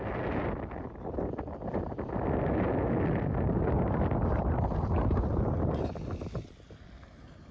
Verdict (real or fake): real